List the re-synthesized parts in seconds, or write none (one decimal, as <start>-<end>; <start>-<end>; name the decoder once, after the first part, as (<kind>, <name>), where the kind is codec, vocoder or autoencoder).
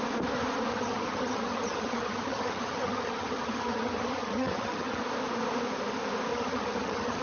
0.7-5.0 (vocoder, HiFi-GAN); 6.3-7.2